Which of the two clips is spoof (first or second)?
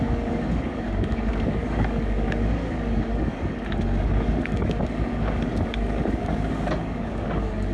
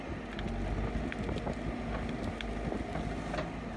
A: first